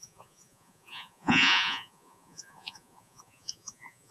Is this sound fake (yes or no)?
yes